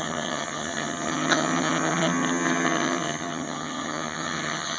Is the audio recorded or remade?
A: remade